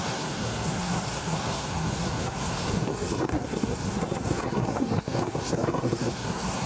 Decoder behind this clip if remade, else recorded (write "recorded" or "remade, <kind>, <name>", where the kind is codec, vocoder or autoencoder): remade, codec, SNAC